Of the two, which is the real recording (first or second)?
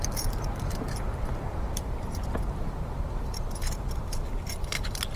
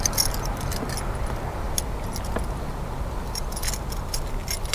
second